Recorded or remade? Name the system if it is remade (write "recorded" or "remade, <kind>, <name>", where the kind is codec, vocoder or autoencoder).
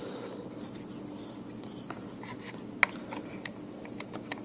recorded